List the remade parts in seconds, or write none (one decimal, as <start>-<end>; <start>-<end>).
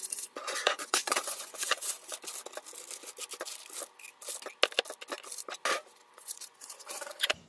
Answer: 0.0-2.1; 6.1-7.5